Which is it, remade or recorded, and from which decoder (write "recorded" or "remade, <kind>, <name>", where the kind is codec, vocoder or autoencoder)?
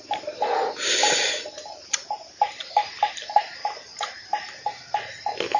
recorded